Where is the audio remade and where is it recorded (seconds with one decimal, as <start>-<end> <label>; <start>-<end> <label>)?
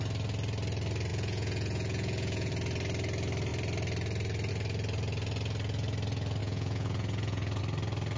0.0-1.1 recorded; 1.1-2.5 remade; 2.5-6.4 recorded; 6.4-7.6 remade; 7.6-8.2 recorded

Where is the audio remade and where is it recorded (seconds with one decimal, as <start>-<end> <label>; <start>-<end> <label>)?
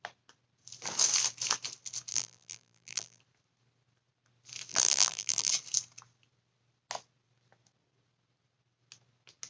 0.0-2.1 recorded; 2.1-3.2 remade; 3.2-4.7 recorded; 4.7-5.5 remade; 5.5-9.5 recorded